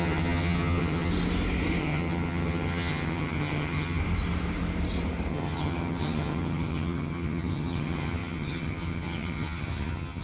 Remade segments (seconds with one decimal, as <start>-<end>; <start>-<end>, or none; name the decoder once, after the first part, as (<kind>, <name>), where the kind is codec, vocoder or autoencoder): 0.0-1.1 (vocoder, HiFi-GAN); 1.8-4.0; 5.3-10.2